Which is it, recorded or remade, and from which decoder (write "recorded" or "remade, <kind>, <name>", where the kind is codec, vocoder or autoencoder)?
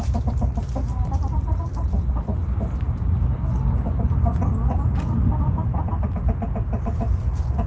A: recorded